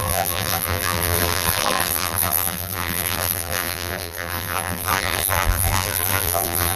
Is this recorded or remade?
remade